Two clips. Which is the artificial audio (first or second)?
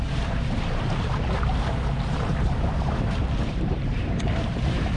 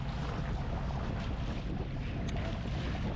first